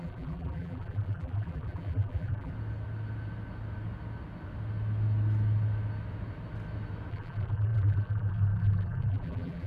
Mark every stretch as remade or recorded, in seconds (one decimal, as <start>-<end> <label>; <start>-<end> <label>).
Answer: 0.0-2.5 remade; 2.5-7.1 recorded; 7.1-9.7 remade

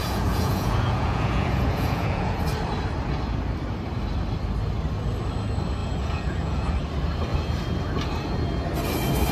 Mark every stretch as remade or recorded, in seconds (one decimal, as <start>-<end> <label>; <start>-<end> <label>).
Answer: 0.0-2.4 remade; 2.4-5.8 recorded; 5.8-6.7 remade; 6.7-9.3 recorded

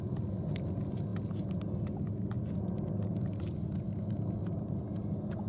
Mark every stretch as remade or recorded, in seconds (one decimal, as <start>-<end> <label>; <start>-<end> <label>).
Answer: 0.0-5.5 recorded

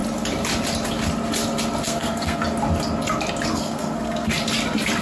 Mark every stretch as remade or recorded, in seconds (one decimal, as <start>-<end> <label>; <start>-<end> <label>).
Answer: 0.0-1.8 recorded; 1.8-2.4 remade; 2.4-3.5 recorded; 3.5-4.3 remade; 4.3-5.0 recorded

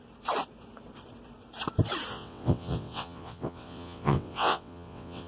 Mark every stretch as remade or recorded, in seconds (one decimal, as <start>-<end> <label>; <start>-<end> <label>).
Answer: 0.0-2.1 recorded; 2.1-5.3 remade